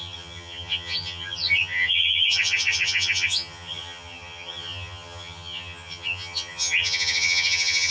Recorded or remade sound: remade